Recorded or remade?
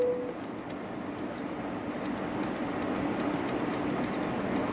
recorded